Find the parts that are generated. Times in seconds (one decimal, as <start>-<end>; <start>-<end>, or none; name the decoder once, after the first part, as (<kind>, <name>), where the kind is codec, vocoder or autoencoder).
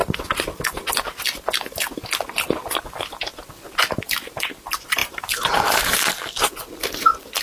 5.0-6.1 (vocoder, BigVGAN v2)